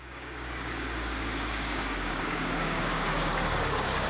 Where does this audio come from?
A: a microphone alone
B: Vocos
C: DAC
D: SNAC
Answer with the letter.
C